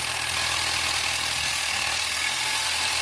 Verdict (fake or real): real